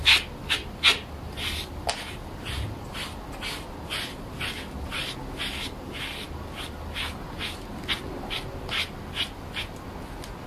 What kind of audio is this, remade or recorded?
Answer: recorded